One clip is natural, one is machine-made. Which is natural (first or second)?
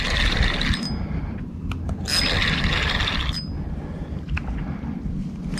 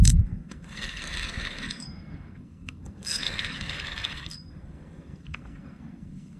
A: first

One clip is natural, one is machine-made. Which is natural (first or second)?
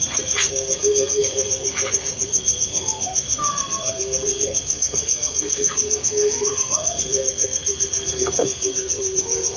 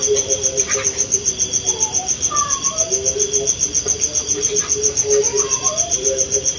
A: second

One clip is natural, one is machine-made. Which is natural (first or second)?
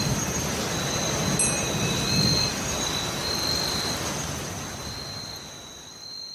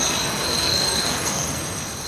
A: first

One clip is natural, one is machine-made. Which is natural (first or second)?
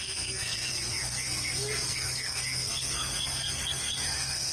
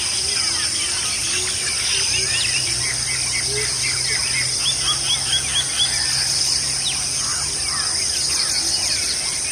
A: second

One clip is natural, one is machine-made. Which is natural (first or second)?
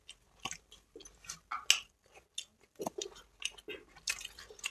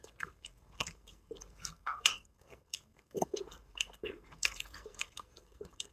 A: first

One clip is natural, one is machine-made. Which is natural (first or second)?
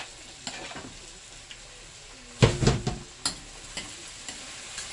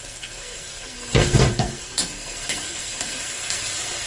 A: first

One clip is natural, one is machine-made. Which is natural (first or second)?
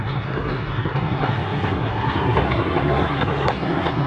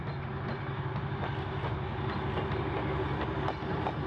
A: second